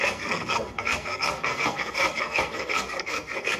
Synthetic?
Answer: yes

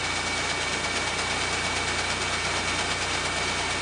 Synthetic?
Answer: no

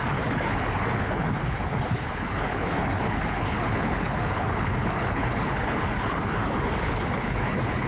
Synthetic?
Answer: yes